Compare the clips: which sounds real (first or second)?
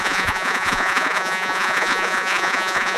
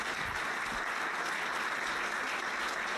second